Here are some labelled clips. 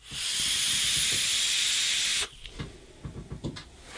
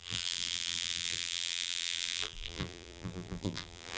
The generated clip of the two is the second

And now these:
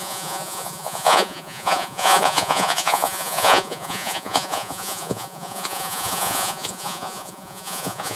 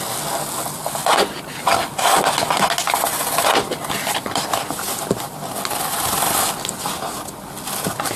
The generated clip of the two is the first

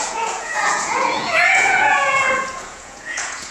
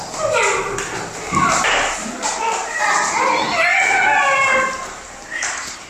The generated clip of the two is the first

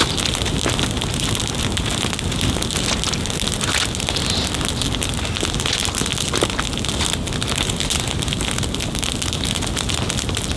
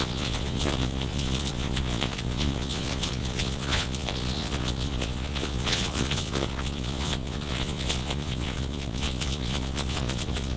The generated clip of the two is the second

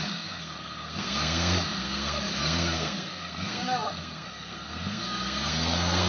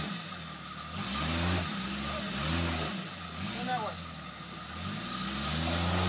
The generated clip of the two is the first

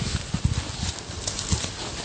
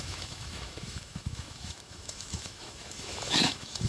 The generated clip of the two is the second